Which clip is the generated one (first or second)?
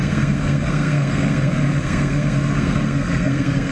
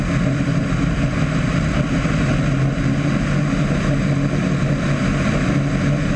first